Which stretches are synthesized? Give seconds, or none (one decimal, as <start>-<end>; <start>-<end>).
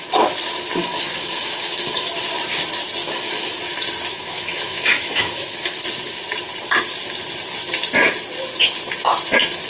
0.8-2.1; 3.0-3.6; 4.1-5.8